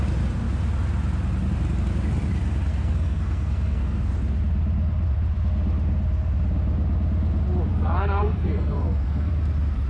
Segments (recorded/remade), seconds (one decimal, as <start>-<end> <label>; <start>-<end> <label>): 0.0-2.7 recorded; 2.7-4.1 remade; 4.1-7.7 recorded; 7.7-9.3 remade; 9.3-9.9 recorded